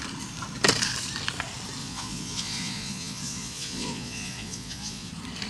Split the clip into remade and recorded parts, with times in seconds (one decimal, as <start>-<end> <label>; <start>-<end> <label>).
0.0-1.8 recorded; 1.8-5.1 remade; 5.1-5.5 recorded